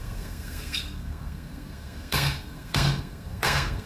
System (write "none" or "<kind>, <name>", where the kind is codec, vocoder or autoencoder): codec, SNAC